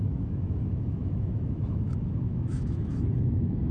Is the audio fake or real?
fake